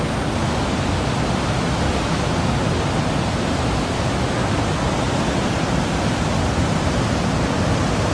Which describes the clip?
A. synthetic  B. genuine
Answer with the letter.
B